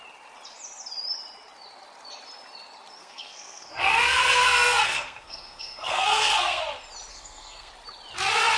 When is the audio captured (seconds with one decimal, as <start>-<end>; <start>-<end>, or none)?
0.0-3.0; 6.6-7.1; 7.7-8.6